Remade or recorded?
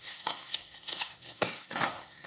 remade